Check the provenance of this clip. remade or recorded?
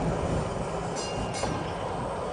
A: recorded